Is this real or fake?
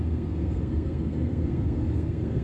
fake